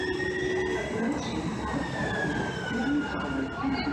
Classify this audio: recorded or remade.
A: recorded